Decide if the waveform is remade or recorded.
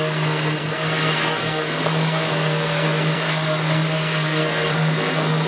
remade